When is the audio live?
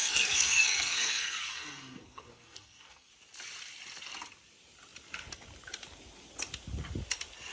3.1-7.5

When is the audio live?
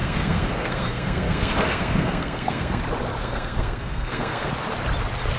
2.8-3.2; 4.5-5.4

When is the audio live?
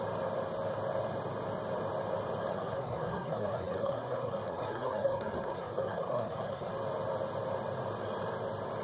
0.0-2.5; 6.7-8.8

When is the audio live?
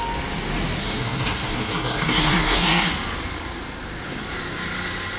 0.0-0.8; 2.9-5.2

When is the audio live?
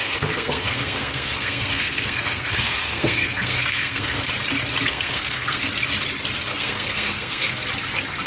4.3-4.9; 5.7-6.5; 7.5-8.3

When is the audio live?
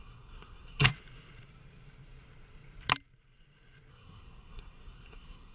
0.9-3.9